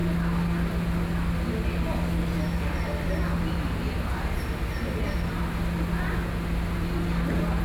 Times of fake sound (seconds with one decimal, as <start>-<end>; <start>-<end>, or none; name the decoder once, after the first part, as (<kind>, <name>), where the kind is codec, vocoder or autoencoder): none